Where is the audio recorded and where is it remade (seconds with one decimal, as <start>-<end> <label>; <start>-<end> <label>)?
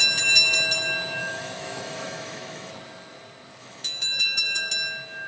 0.0-1.2 recorded; 1.2-2.7 remade; 2.7-3.6 recorded; 3.6-4.7 remade; 4.7-5.3 recorded